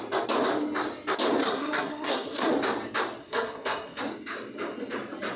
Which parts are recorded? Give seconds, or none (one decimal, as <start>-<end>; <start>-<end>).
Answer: 0.0-1.4; 2.5-3.2; 4.0-5.4